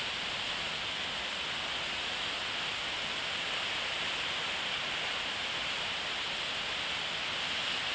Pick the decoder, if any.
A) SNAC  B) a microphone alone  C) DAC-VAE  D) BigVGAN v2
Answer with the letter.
B